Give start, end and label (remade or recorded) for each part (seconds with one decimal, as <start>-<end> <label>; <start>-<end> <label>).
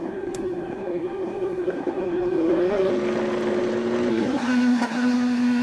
0.0-2.9 remade; 2.9-4.1 recorded; 4.1-5.6 remade